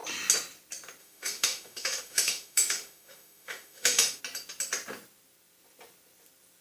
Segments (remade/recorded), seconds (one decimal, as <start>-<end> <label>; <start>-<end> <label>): 0.0-1.0 recorded; 1.0-4.2 remade; 4.2-6.6 recorded